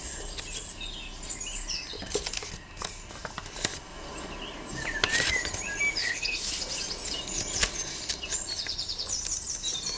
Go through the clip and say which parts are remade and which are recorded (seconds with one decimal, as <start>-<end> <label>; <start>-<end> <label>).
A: 0.0-6.0 recorded; 6.0-6.6 remade; 6.6-10.0 recorded